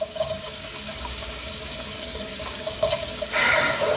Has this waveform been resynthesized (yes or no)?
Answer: yes